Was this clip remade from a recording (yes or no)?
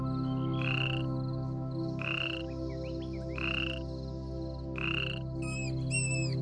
no